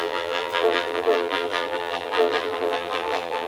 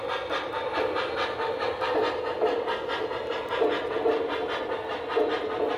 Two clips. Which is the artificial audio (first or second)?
first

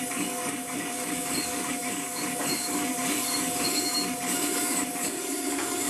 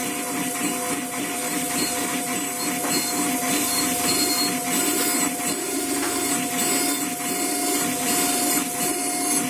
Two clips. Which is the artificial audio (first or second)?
first